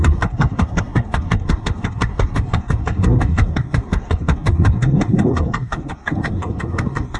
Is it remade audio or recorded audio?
remade